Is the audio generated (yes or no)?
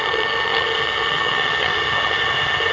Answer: yes